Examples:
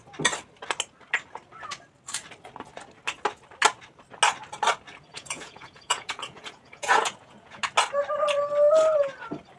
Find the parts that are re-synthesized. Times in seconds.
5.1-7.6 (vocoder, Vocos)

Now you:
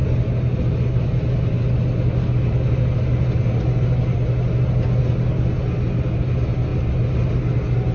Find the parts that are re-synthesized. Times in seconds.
none

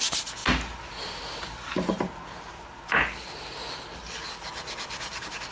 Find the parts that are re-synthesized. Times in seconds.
none

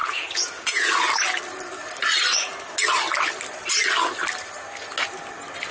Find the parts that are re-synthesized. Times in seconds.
0.0-0.9 (vocoder, Vocos)